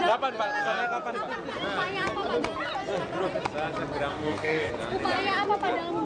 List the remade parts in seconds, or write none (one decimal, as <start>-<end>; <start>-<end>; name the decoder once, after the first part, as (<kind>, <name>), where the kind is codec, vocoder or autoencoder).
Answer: 4.1-4.7 (codec, DAC)